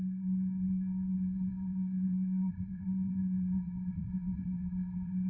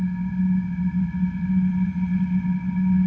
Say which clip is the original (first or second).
second